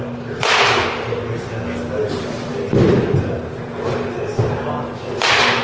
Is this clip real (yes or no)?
yes